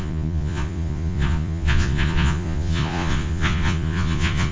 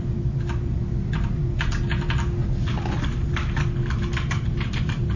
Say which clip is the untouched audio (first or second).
second